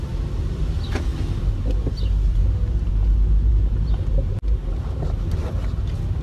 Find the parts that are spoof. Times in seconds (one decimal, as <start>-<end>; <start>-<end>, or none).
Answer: none